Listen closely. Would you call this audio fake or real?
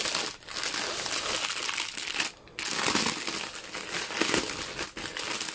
real